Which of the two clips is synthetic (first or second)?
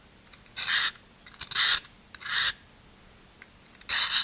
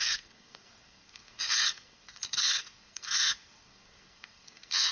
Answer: second